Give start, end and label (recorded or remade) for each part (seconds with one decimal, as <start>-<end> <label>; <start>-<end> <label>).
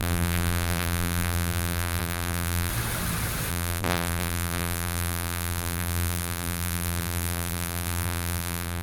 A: 0.0-2.7 remade; 2.7-3.5 recorded; 3.5-8.8 remade